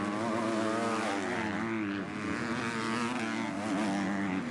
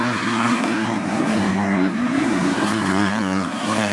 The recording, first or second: first